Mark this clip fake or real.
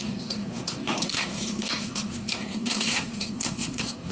fake